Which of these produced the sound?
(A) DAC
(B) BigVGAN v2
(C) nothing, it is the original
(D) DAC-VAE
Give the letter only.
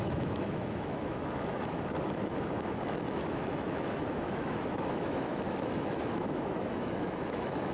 D